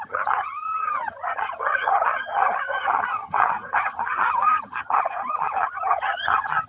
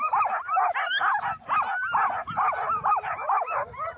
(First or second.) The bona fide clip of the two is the second